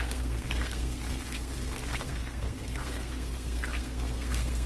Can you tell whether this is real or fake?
fake